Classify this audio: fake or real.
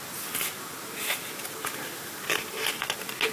real